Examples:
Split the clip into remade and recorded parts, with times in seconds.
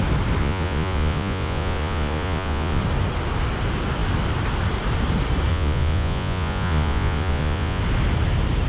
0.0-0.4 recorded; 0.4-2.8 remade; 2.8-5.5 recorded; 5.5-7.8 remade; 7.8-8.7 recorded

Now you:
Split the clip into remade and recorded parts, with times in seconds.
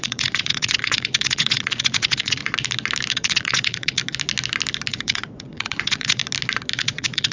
0.0-2.4 remade; 2.4-3.1 recorded; 3.1-4.0 remade; 4.0-4.9 recorded; 4.9-6.2 remade; 6.2-6.8 recorded; 6.8-7.3 remade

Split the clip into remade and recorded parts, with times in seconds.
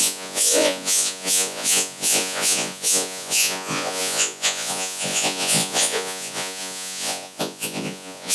0.0-8.3 remade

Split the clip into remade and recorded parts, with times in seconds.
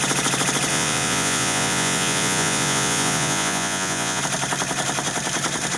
0.0-0.7 recorded; 0.7-4.2 remade; 4.2-5.8 recorded